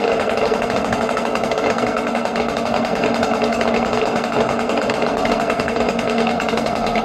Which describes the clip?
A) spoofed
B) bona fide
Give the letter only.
A